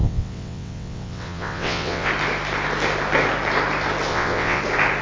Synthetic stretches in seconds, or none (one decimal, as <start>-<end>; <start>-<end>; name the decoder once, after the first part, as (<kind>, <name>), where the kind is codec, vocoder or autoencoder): 0.0-2.1 (vocoder, WaveNeXt); 4.1-4.6